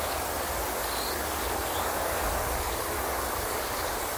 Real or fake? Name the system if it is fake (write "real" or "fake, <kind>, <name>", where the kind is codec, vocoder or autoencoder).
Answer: fake, codec, DAC